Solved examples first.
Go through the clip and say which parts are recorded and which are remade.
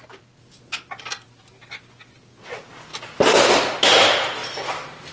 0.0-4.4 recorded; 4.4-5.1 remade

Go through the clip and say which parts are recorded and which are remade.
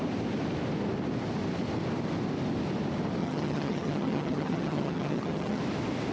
0.0-3.2 recorded; 3.2-5.6 remade; 5.6-6.1 recorded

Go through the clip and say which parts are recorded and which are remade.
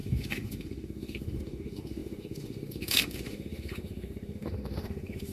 0.0-5.3 remade